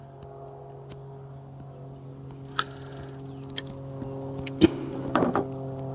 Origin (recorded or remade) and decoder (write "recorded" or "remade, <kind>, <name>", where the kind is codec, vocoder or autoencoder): recorded